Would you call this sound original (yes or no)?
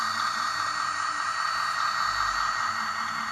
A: yes